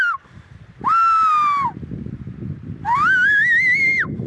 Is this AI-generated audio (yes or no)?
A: no